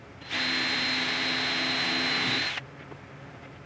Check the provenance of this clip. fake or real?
real